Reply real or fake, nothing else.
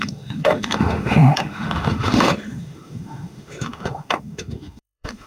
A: fake